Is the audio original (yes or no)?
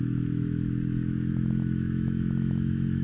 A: no